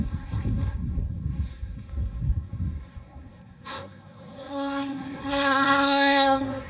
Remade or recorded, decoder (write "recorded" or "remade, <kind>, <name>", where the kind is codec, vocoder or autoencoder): remade, codec, SNAC